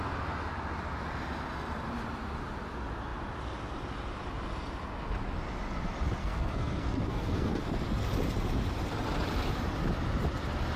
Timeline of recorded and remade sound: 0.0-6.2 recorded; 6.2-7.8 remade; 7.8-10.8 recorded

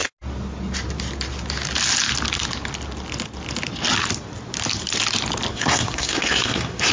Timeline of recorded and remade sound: 0.0-5.5 recorded; 5.5-6.9 remade

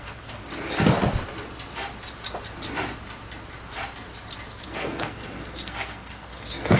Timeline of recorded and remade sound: 0.0-0.4 remade; 0.4-4.5 recorded; 4.5-6.8 remade

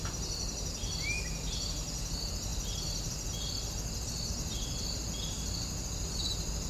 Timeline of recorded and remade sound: 0.0-6.7 recorded

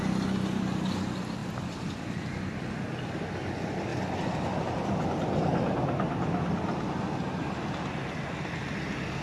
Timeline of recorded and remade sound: 0.0-9.2 recorded

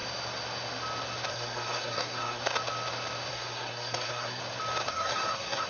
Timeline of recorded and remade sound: 0.0-1.3 recorded; 1.3-2.4 remade; 2.4-3.3 recorded; 3.3-4.4 remade; 4.4-4.9 recorded; 4.9-5.7 remade

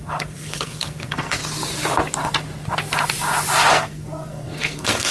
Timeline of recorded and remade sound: 0.0-1.4 remade; 1.4-3.7 recorded; 3.7-5.1 remade